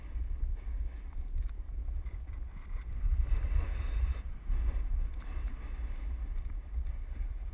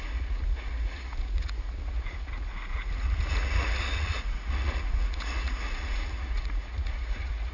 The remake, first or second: second